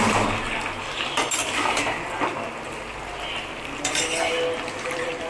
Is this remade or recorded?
recorded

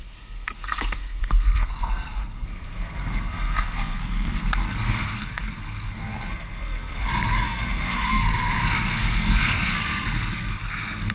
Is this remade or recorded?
remade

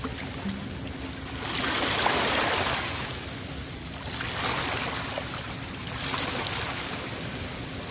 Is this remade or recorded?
recorded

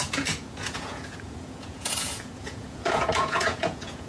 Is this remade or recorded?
remade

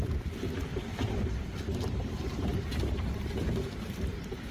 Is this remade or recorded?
remade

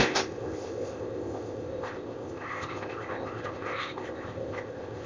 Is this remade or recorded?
remade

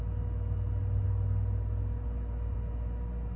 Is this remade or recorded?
recorded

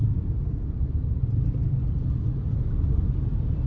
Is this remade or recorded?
remade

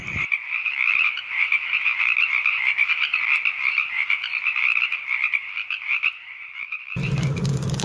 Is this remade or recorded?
remade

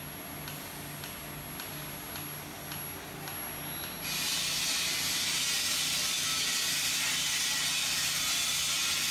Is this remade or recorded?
recorded